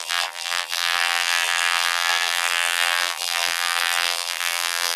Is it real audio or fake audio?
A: fake